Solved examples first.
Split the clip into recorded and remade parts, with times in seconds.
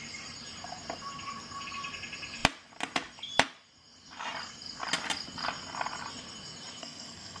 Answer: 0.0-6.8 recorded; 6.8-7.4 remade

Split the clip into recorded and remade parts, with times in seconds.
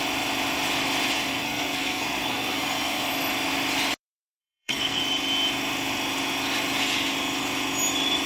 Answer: 0.0-1.3 recorded; 1.3-3.1 remade; 3.1-4.4 recorded; 4.4-5.0 remade; 5.0-8.3 recorded